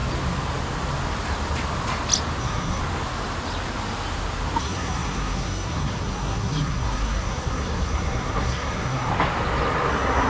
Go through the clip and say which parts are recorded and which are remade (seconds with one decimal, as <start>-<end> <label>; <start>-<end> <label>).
0.0-2.4 recorded; 2.4-2.8 remade; 2.8-4.6 recorded; 4.6-9.1 remade; 9.1-9.9 recorded; 9.9-10.3 remade